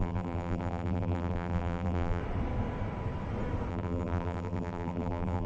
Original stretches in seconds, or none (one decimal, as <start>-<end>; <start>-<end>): 2.2-3.7